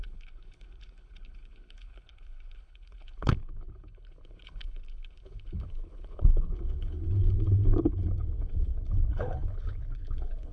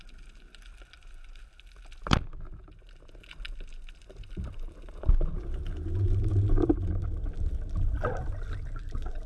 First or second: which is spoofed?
first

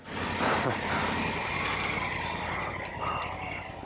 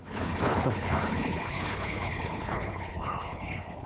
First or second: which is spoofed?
second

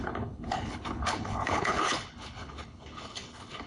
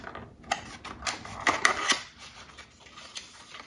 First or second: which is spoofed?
first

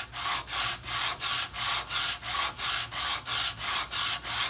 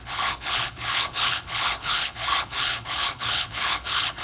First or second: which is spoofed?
second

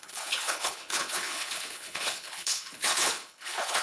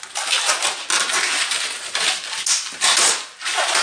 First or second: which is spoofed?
first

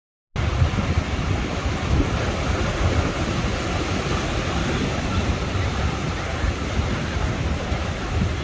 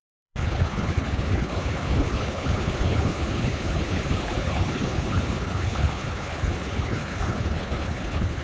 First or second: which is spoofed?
second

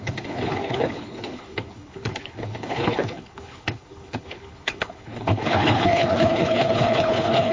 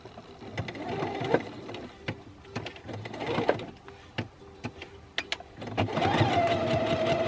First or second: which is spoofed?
first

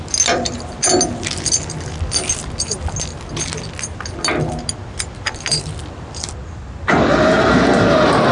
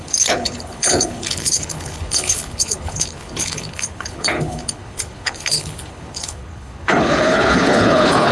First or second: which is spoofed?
second